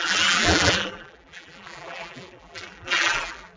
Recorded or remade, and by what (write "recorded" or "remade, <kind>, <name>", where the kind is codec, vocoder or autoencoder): remade, vocoder, BigVGAN v2